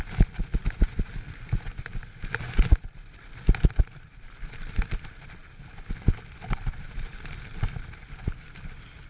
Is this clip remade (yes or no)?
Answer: no